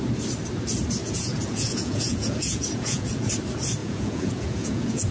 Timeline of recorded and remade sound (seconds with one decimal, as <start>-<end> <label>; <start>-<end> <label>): 0.0-1.0 recorded; 1.0-3.3 remade; 3.3-3.8 recorded; 3.8-5.1 remade